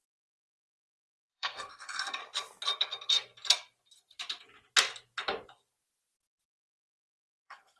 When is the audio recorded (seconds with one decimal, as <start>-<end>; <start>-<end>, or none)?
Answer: 2.2-6.9